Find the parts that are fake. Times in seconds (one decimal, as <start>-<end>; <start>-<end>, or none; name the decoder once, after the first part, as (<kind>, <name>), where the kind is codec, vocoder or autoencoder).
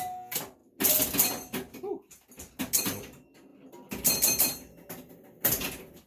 none